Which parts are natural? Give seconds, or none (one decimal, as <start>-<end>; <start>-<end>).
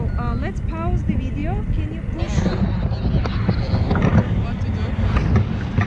0.0-5.9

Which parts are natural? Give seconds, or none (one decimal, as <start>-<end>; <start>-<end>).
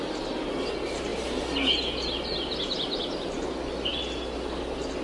0.0-5.0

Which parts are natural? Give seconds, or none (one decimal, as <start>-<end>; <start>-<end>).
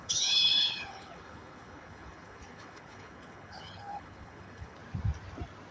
4.8-5.7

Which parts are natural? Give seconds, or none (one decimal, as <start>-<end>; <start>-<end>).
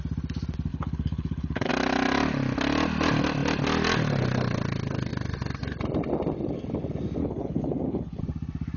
0.0-0.7; 1.7-7.2; 8.2-8.8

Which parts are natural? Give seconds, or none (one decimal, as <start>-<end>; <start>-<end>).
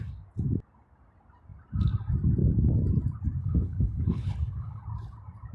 0.0-3.4; 4.8-5.5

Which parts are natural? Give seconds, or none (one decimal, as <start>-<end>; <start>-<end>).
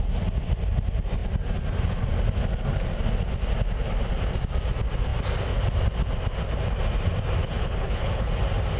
0.0-7.4; 8.3-8.8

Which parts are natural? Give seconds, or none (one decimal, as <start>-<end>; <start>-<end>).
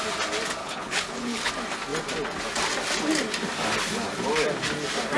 0.0-0.6; 1.5-5.2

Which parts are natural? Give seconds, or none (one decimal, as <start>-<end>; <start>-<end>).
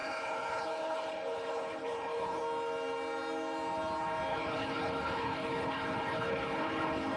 2.4-4.3